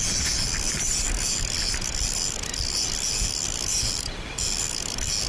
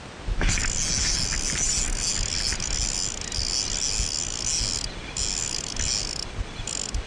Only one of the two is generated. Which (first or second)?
first